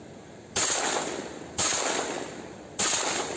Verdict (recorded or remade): recorded